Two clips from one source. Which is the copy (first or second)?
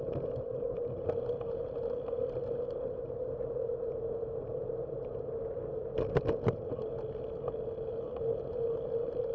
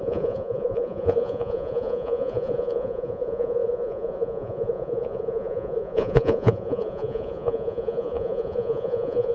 second